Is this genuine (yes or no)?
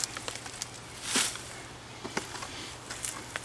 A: yes